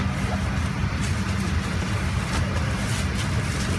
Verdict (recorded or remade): recorded